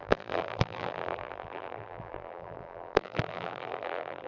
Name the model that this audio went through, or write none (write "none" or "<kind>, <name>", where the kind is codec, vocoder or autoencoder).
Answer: vocoder, BigVGAN v2